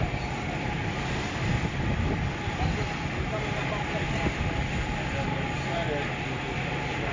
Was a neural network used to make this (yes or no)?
no